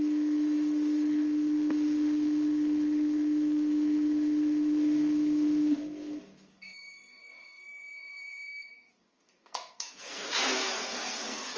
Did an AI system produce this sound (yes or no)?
yes